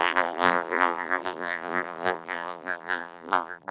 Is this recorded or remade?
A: remade